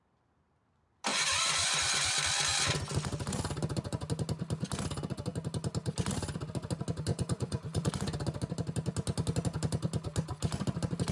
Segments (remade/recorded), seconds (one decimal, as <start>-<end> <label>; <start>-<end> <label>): 0.0-1.1 recorded; 1.1-2.1 remade; 2.1-7.1 recorded; 7.1-7.9 remade; 7.9-11.1 recorded